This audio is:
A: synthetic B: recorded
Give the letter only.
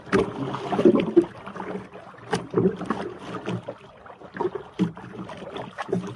B